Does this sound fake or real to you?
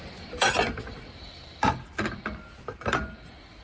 fake